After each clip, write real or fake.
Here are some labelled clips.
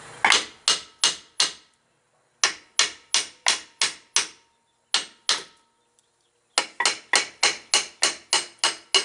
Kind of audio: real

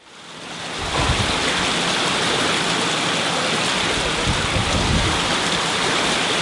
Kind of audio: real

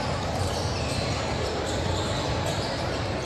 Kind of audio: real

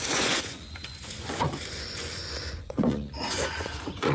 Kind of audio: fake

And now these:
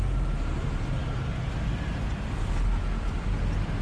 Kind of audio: real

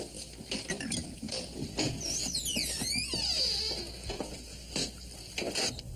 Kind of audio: real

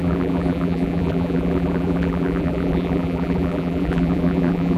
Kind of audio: fake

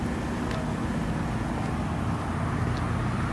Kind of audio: real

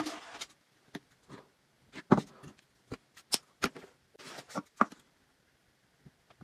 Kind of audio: real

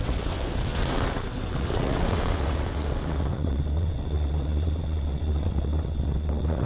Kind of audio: fake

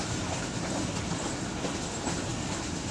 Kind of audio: real